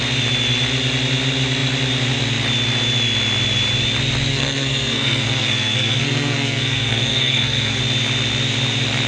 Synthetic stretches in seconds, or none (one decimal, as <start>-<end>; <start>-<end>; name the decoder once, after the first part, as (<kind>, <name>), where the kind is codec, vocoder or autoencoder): 4.3-7.8 (codec, SNAC)